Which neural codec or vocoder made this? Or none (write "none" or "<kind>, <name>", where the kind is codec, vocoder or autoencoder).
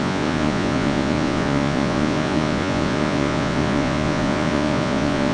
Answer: vocoder, Vocos